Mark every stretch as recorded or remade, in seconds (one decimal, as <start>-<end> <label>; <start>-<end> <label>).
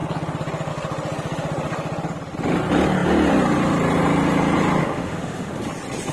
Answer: 0.0-4.8 recorded; 4.8-5.6 remade; 5.6-6.1 recorded